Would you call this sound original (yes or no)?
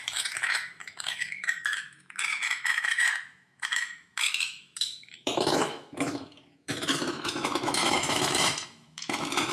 no